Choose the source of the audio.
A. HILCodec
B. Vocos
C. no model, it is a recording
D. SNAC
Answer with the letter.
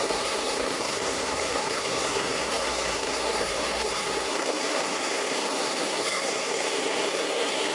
D